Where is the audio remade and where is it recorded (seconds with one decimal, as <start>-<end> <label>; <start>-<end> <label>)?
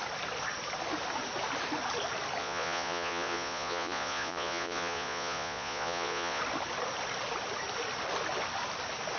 0.0-2.4 recorded; 2.4-6.4 remade; 6.4-9.2 recorded